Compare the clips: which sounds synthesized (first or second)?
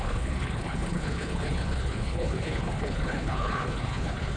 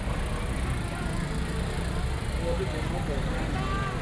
first